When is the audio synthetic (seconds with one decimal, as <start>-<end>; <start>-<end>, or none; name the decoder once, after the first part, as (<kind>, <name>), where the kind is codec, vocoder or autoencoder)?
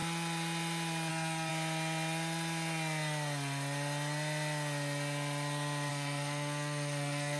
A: 1.1-1.5 (codec, SNAC); 5.9-7.4